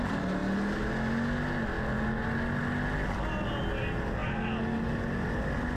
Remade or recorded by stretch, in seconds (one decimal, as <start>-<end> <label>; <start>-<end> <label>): 0.0-5.8 recorded